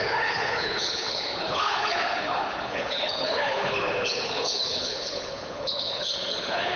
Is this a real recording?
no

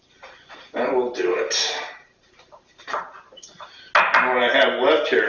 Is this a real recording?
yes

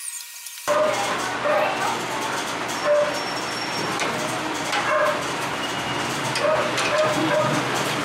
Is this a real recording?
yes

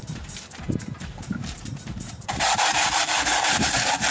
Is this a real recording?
no